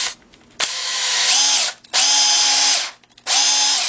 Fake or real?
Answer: real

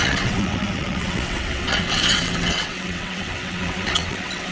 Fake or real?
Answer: fake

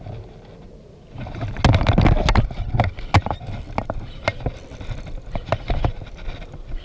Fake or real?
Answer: real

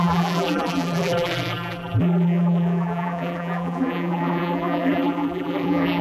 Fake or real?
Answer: fake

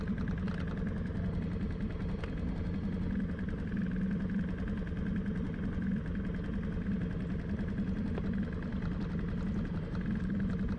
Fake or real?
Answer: real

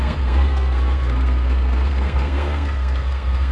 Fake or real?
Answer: fake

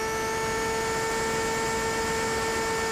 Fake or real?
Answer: real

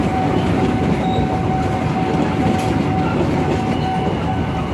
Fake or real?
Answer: real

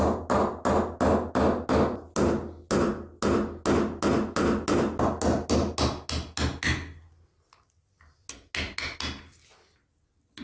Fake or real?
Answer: real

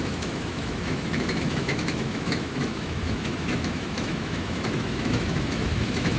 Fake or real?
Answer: fake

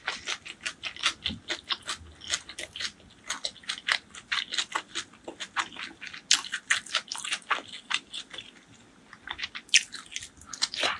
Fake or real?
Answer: real